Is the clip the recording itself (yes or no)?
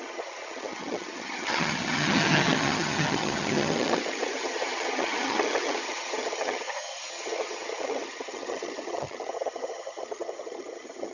no